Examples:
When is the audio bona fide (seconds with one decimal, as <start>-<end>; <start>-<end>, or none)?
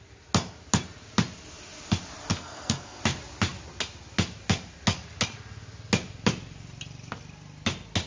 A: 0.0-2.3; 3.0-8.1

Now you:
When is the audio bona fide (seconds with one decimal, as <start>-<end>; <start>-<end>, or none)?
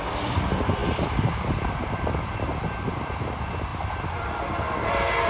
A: none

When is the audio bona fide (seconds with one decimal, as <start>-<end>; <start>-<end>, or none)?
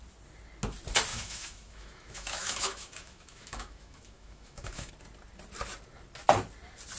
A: 0.0-1.1; 4.9-7.0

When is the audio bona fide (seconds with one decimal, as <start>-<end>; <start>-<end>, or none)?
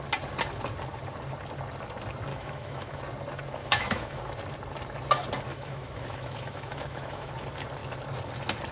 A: 0.0-2.3; 3.0-3.6; 4.2-5.5; 7.3-8.7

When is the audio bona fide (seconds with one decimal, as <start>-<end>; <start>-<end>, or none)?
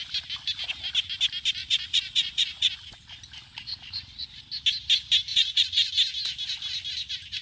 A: 0.0-1.6; 2.7-3.7; 4.4-5.3; 5.9-7.4